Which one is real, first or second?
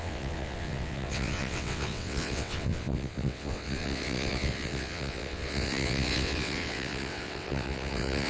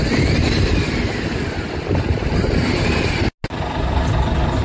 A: second